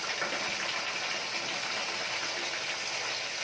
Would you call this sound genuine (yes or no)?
yes